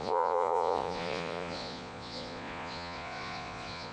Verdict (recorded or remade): remade